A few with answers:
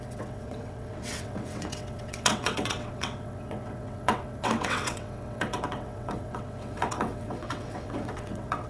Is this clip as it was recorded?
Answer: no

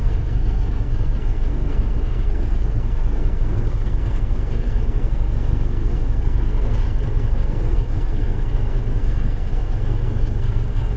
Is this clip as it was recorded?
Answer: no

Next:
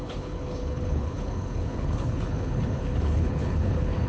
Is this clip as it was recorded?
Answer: no